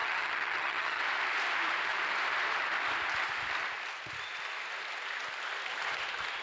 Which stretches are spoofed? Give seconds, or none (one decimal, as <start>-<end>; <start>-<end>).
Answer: 0.0-1.0